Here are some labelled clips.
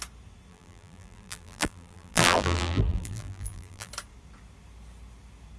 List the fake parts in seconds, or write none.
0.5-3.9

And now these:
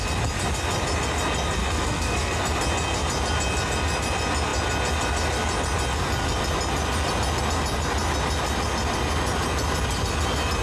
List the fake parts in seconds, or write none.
1.6-2.4

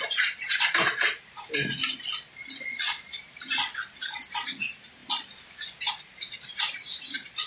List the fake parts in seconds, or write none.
0.0-1.9; 4.6-5.0; 5.9-7.5

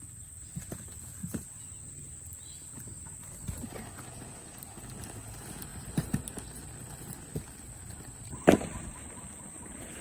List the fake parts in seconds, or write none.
none

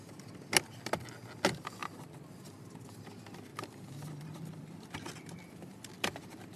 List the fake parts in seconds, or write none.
1.8-3.0; 3.5-5.9

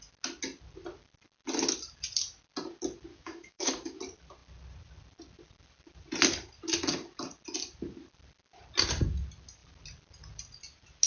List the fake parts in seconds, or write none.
3.1-4.0

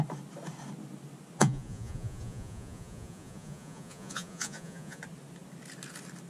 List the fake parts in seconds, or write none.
1.4-5.0